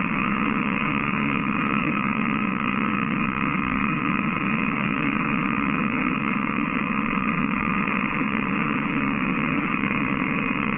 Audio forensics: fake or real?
fake